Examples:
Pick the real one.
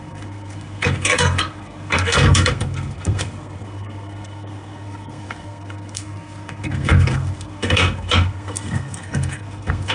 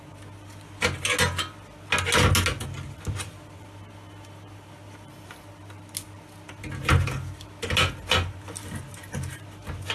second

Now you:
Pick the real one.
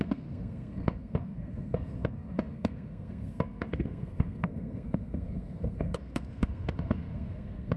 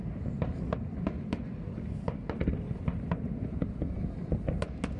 second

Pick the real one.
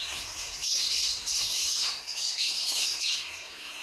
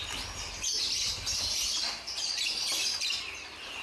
second